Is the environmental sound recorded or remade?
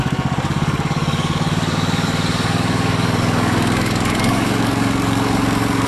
remade